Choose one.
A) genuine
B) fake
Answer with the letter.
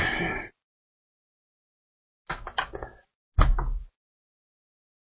A